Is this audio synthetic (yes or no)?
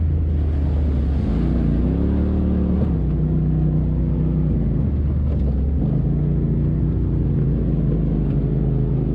no